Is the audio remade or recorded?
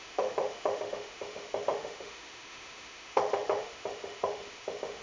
remade